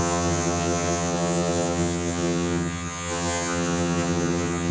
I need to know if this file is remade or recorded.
remade